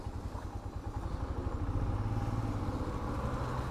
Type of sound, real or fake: real